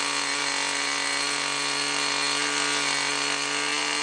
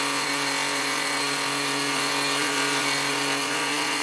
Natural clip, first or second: first